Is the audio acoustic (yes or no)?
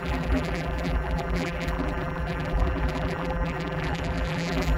no